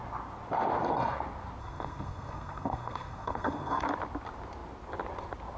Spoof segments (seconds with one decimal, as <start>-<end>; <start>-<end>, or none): 1.6-3.8